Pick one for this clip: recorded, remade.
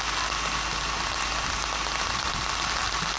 recorded